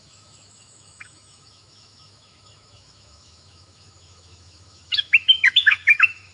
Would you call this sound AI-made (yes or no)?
yes